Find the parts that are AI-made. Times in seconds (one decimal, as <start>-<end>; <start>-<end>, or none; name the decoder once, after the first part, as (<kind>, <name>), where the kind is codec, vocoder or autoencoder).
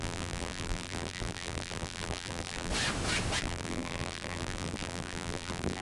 0.0-2.7 (vocoder, BigVGAN v2); 3.4-5.8